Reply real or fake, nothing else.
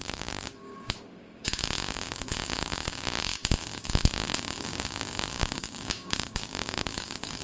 fake